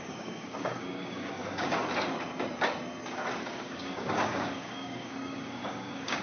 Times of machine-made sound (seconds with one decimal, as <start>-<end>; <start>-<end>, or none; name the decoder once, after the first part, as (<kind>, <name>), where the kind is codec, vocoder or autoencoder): 0.0-1.8 (codec, DAC); 3.5-6.2